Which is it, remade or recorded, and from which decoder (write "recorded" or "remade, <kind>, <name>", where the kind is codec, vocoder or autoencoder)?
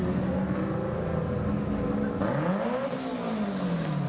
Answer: recorded